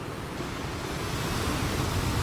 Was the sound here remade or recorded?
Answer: recorded